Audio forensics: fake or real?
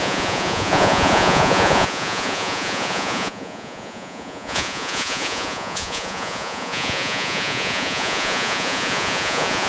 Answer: fake